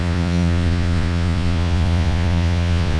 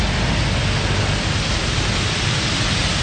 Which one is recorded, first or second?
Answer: second